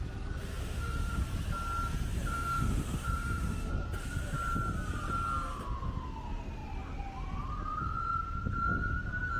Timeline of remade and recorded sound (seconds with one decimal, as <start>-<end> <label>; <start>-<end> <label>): 0.0-0.6 recorded; 0.6-1.2 remade; 1.2-2.3 recorded; 2.3-3.7 remade; 3.7-9.4 recorded